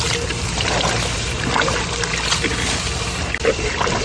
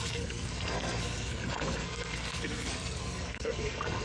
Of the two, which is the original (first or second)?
first